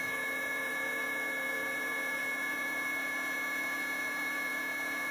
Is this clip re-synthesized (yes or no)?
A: yes